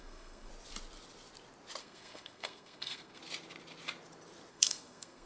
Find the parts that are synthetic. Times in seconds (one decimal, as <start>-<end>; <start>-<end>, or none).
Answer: 0.0-0.5; 1.8-3.2; 4.5-5.3